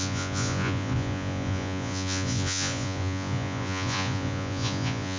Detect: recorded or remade remade